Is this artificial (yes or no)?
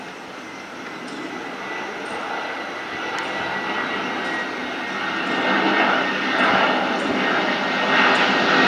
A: no